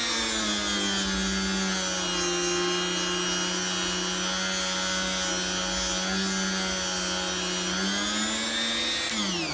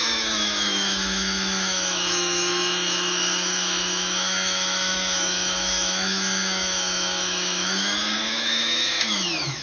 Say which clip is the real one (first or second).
first